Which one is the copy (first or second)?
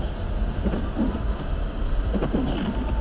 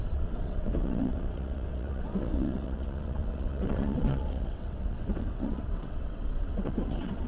second